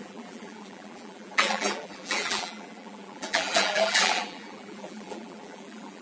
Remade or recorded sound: remade